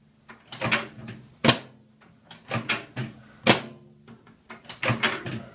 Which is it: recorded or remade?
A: recorded